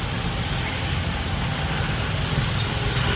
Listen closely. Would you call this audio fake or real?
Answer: real